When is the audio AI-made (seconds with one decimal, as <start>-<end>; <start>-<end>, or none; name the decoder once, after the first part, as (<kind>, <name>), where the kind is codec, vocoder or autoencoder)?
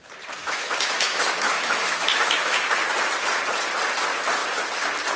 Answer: 0.4-2.7 (autoencoder, DAC-VAE)